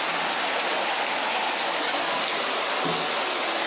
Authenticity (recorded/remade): recorded